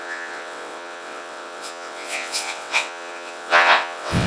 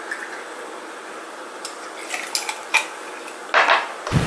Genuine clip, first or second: second